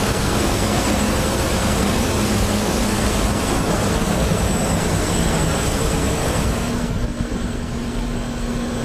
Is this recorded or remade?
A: remade